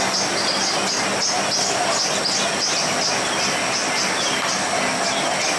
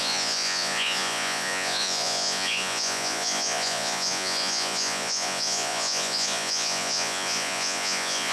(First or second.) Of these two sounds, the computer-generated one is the second